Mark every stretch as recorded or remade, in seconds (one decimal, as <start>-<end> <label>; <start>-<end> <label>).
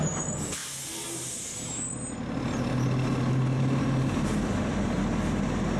0.0-0.6 remade; 0.6-3.6 recorded; 3.6-5.8 remade